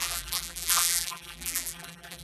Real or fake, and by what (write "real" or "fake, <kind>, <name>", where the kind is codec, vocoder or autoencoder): fake, vocoder, BigVGAN v2